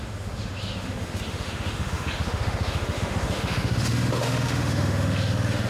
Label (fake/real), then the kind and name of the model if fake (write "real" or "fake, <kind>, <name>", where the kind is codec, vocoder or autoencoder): fake, autoencoder, DAC-VAE